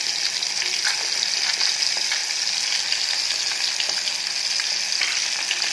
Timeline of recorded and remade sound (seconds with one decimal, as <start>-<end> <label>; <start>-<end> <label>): 0.0-5.7 recorded